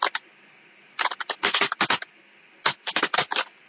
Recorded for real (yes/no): no